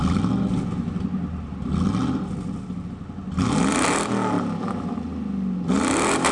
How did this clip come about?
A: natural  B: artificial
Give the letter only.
A